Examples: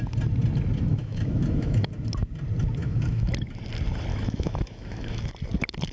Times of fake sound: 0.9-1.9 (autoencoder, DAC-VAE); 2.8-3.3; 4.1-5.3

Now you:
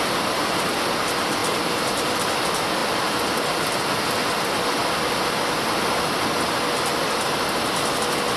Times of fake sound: 1.4-2.1 (vocoder, BigVGAN v2)

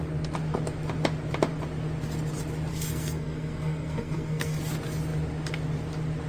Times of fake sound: 2.7-4.6 (codec, SNAC)

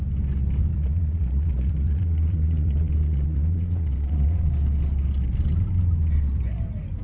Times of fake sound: 0.7-4.5 (vocoder, Vocos)